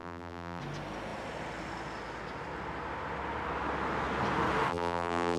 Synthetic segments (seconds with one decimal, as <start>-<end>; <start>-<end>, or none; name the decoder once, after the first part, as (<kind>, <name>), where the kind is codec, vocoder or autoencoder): 0.0-0.6 (vocoder, BigVGAN v2); 4.7-5.4